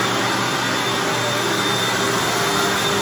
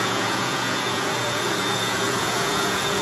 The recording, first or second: first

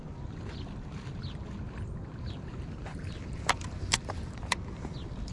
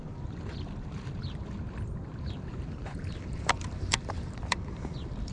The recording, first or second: first